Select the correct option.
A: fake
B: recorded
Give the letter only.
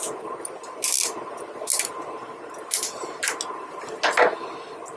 B